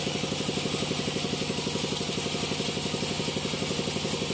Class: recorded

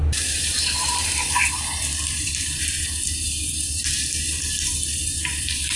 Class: remade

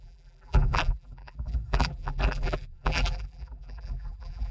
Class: remade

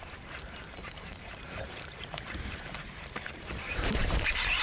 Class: remade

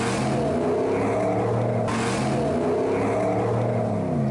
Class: recorded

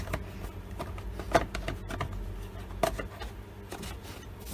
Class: recorded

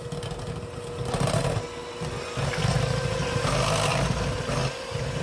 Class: recorded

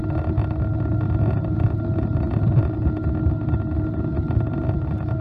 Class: recorded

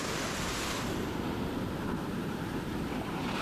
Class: remade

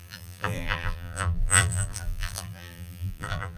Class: remade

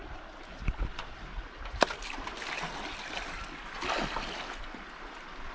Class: recorded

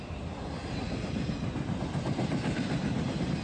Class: recorded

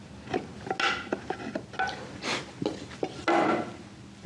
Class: recorded